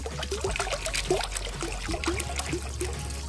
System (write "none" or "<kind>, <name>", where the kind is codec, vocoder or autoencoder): none